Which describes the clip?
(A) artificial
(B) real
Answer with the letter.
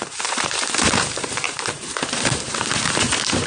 A